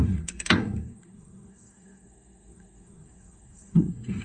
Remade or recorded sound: remade